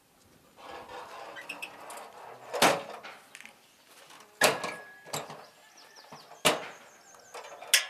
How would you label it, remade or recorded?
recorded